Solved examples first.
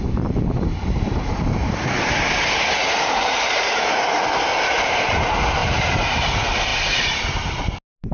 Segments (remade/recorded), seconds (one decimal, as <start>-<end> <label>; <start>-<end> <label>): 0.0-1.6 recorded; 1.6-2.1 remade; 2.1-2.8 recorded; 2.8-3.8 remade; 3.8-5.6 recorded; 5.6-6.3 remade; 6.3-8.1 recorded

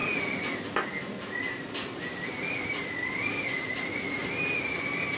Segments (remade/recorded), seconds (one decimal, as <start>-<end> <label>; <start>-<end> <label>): 0.0-2.6 recorded; 2.6-4.2 remade; 4.2-5.2 recorded

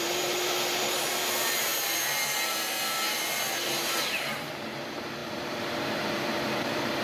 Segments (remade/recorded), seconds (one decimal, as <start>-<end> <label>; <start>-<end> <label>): 0.0-7.0 remade

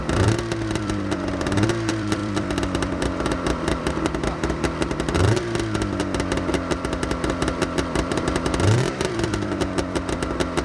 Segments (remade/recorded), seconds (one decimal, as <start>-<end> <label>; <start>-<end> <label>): 0.0-10.6 remade

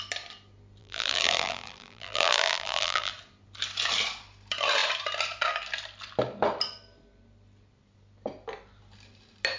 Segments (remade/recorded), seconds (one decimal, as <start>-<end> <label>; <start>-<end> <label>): 0.0-0.8 recorded; 0.8-3.1 remade; 3.1-9.6 recorded

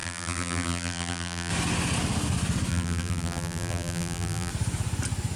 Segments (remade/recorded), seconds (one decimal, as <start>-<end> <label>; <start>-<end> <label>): 0.0-1.5 remade; 1.5-2.7 recorded; 2.7-4.5 remade; 4.5-5.4 recorded